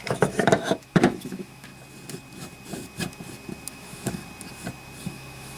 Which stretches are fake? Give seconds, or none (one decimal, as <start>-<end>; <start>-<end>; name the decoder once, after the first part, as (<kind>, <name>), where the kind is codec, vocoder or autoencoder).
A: 0.0-1.7 (autoencoder, DAC-VAE); 3.7-4.2; 5.0-5.6